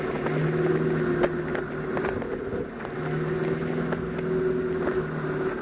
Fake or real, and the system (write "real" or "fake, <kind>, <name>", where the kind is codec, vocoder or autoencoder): real